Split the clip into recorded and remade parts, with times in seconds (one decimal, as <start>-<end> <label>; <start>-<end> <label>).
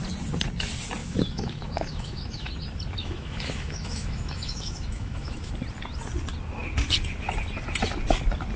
0.0-1.0 recorded; 1.0-2.5 remade; 2.5-3.0 recorded; 3.0-5.5 remade; 5.5-8.6 recorded